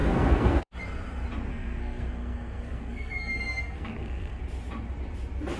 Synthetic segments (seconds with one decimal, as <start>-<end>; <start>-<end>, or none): 0.0-0.7; 1.5-4.4